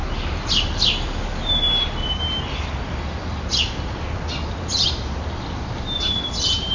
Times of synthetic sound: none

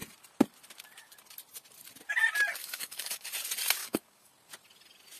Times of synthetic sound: 2.6-3.3 (codec, DAC); 3.8-4.3

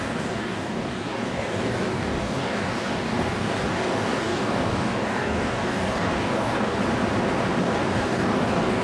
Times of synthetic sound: 0.0-6.8 (codec, DAC); 7.6-8.8